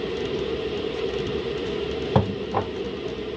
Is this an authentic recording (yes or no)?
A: yes